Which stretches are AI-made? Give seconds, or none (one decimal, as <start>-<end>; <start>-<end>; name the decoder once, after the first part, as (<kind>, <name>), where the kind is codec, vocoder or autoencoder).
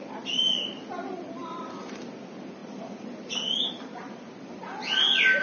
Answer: 0.0-4.6 (vocoder, BigVGAN v2)